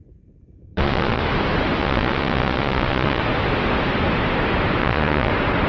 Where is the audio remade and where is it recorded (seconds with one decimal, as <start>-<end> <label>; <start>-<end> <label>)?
0.0-0.7 recorded; 0.7-1.2 remade; 1.2-1.8 recorded; 1.8-3.2 remade; 3.2-4.8 recorded; 4.8-5.3 remade; 5.3-5.7 recorded